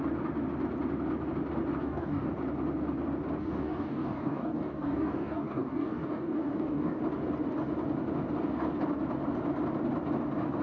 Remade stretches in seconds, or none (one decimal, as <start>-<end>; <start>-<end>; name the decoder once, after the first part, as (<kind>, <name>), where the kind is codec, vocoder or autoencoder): 1.8-2.3 (codec, DAC); 3.4-7.0